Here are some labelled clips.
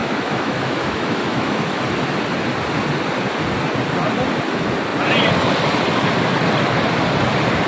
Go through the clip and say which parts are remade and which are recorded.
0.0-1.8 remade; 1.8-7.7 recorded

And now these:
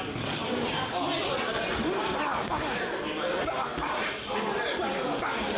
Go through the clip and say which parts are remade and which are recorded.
0.0-5.6 recorded

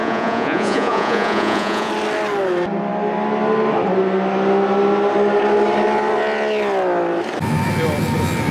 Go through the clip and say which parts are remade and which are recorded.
0.0-1.9 remade; 1.9-8.5 recorded

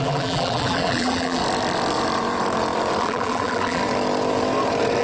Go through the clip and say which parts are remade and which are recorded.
0.0-1.4 remade; 1.4-3.0 recorded; 3.0-3.8 remade; 3.8-5.0 recorded

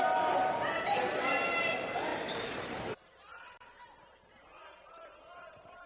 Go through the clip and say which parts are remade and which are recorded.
0.0-2.1 recorded; 2.1-5.9 remade

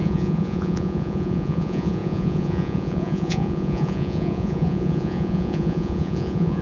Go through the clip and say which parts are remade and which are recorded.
0.0-6.6 remade

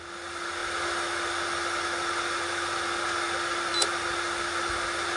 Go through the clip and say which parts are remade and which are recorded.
0.0-5.2 recorded

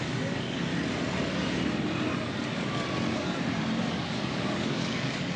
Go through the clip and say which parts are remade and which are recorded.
0.0-0.7 remade; 0.7-3.9 recorded; 3.9-5.4 remade